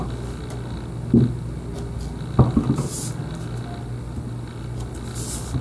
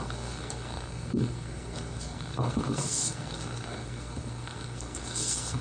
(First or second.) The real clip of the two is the first